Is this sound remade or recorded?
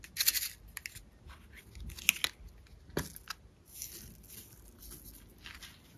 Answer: recorded